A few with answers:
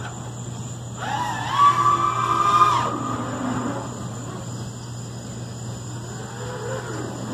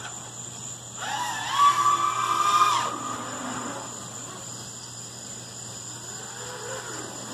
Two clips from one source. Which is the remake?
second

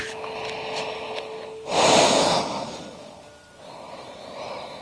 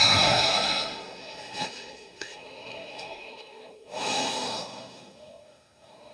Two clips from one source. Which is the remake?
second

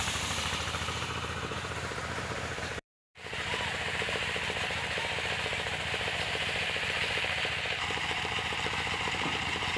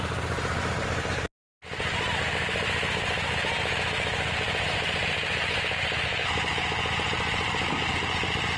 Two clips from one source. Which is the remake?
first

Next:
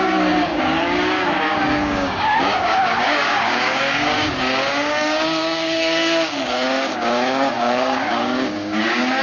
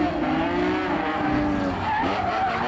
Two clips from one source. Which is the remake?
first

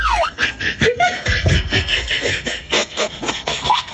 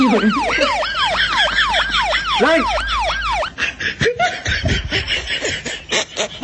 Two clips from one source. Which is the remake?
first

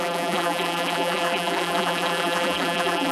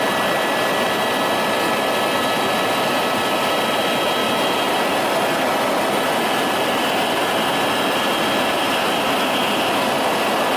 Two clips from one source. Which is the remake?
first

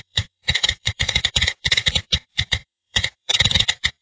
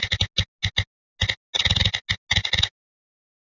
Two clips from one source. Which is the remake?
first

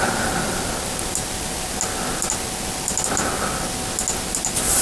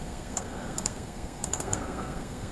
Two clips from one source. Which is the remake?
second